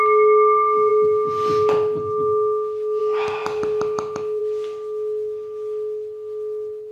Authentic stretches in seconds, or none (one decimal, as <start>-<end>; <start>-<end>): 0.0-6.9